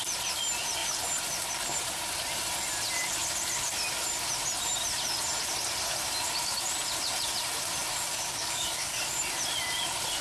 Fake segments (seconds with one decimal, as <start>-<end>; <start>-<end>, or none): 8.1-9.2